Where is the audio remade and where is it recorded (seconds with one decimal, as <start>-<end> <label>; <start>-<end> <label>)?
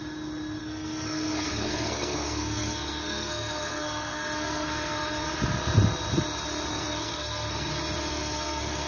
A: 0.0-0.6 recorded; 0.6-5.3 remade; 5.3-6.7 recorded; 6.7-7.7 remade; 7.7-8.1 recorded; 8.1-8.9 remade